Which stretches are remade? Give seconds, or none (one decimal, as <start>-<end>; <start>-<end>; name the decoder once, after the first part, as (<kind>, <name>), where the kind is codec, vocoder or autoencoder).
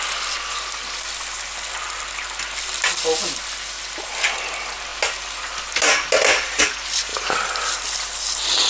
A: none